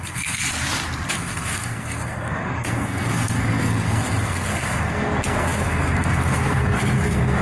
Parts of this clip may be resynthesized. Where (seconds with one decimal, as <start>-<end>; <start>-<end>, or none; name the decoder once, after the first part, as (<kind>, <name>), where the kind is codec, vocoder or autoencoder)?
0.0-0.4 (codec, SNAC); 1.1-7.4